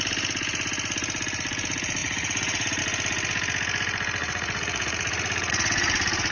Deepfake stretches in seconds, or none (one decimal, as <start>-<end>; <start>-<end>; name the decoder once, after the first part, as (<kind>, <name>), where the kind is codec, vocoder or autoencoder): 2.0-2.8 (vocoder, Vocos); 4.2-6.3